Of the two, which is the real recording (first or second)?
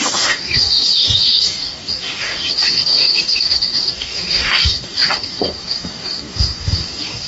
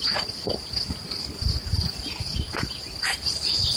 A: second